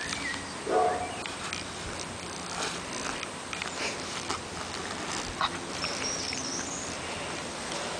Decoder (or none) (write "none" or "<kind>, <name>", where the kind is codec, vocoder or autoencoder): none